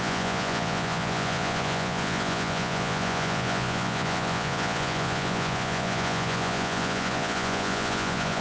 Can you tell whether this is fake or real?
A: fake